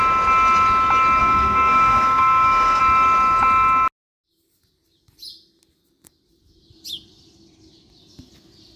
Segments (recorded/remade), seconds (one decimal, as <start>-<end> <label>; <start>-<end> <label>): 0.0-1.2 recorded; 1.2-2.8 remade; 2.8-8.8 recorded